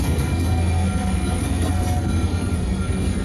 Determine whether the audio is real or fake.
fake